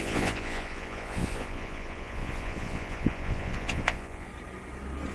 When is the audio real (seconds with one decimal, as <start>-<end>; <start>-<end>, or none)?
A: 4.3-5.1